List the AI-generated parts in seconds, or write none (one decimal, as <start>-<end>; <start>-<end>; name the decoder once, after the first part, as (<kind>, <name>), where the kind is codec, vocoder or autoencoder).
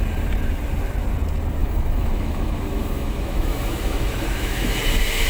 1.6-4.8 (autoencoder, DAC-VAE)